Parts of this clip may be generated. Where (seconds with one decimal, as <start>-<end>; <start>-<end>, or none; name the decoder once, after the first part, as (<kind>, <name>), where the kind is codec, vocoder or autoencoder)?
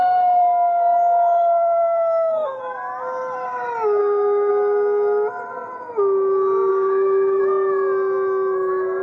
0.0-2.6 (codec, SNAC); 4.0-4.5; 6.7-7.4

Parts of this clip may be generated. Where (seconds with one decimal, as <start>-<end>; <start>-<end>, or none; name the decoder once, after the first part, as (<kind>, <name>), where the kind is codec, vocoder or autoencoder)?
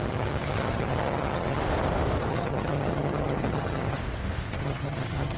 0.0-1.6 (vocoder, HiFi-GAN); 2.3-4.0; 4.6-5.4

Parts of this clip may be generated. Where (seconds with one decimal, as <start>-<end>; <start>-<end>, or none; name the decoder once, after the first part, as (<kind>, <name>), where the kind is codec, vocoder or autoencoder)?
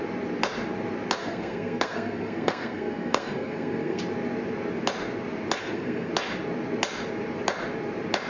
1.2-4.0 (codec, SNAC); 5.6-6.1